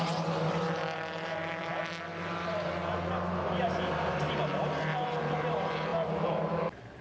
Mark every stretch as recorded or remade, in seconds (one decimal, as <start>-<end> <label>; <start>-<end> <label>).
0.0-7.0 remade

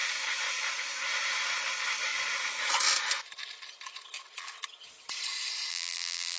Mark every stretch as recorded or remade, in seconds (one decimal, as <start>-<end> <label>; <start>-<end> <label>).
0.0-5.7 recorded; 5.7-6.4 remade

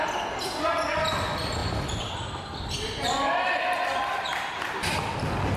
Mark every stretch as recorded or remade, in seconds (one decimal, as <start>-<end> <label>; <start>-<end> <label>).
0.0-1.6 recorded; 1.6-5.0 remade; 5.0-5.6 recorded

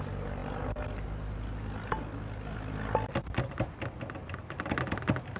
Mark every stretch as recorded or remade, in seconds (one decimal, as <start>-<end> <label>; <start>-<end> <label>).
0.0-4.2 recorded; 4.2-4.7 remade; 4.7-5.4 recorded

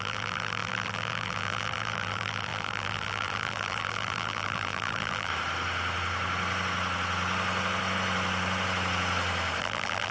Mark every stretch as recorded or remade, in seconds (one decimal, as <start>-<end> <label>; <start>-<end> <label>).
0.0-5.3 remade; 5.3-9.6 recorded; 9.6-10.1 remade

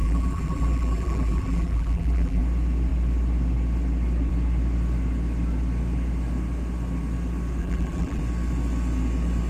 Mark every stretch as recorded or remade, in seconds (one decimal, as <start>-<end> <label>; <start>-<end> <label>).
0.0-2.4 remade; 2.4-7.6 recorded; 7.6-8.2 remade; 8.2-9.5 recorded